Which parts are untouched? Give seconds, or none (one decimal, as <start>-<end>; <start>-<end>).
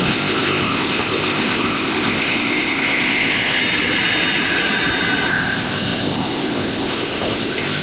3.6-5.3